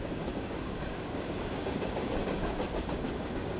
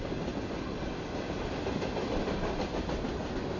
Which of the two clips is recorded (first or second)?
second